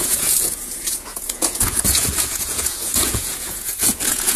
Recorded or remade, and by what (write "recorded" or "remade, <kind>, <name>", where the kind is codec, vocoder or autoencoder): remade, vocoder, Vocos